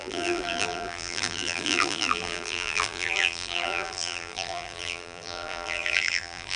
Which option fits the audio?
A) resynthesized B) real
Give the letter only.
A